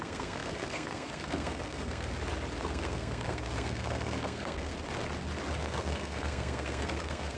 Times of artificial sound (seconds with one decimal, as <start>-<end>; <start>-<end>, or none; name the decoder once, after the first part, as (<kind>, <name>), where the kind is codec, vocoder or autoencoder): 0.0-2.1 (codec, SNAC); 2.6-4.7; 5.6-7.4